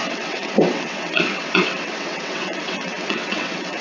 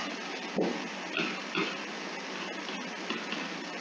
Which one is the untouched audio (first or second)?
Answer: second